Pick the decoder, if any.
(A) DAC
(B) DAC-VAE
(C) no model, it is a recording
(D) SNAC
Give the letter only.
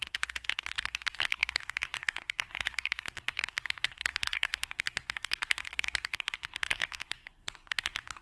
D